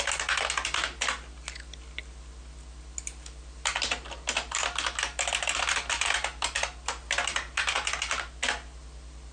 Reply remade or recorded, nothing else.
recorded